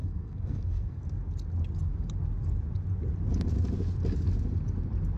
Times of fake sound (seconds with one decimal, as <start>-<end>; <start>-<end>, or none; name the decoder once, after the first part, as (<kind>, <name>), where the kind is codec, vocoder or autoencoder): 0.0-1.0 (codec, SNAC)